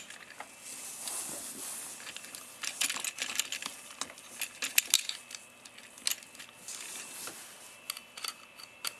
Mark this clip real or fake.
real